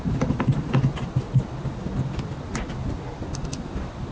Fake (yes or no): no